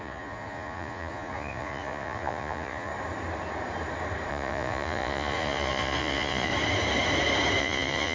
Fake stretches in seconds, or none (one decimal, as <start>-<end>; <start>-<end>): 0.0-2.9; 4.3-6.5; 7.6-8.1